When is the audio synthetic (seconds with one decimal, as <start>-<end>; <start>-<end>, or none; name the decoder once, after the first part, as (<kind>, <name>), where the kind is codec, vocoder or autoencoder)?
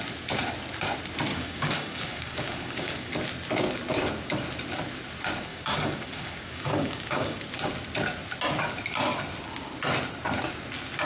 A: 1.3-3.1 (codec, DAC); 5.5-7.4